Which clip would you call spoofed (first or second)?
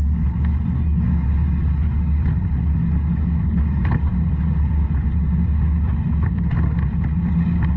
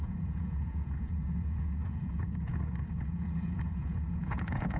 second